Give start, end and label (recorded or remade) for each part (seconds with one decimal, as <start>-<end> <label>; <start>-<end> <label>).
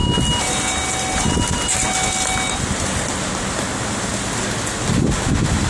0.0-5.7 recorded